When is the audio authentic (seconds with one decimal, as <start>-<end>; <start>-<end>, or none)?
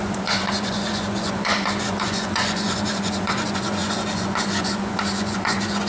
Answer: none